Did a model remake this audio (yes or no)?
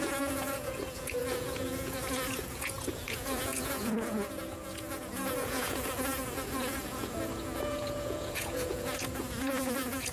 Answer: yes